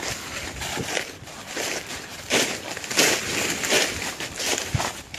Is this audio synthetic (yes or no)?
yes